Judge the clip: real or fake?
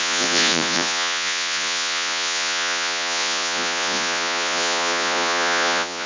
fake